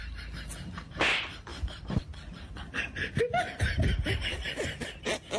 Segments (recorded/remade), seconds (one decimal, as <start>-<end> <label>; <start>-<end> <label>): 0.0-4.3 recorded; 4.3-5.0 remade; 5.0-5.4 recorded